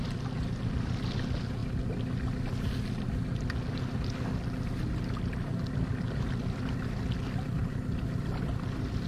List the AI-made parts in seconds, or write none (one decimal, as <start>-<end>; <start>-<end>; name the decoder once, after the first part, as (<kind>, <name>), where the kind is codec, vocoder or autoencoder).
none